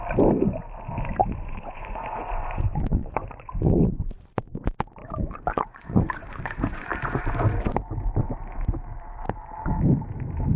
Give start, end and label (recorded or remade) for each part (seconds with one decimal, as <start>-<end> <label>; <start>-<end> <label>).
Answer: 0.0-1.2 recorded; 1.2-4.0 remade; 4.0-5.0 recorded; 5.0-7.2 remade; 7.2-10.6 recorded